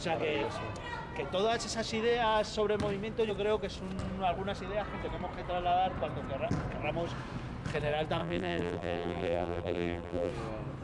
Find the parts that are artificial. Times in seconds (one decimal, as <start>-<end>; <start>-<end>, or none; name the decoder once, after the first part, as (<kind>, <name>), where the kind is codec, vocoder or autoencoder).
8.2-10.3 (vocoder, BigVGAN v2)